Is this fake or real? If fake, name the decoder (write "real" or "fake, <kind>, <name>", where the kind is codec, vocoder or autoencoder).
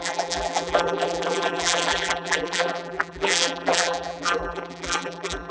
fake, vocoder, BigVGAN v2